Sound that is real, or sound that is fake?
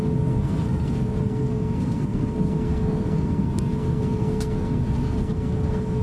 fake